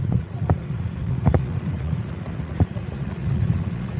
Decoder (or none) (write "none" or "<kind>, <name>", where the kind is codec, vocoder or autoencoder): vocoder, Vocos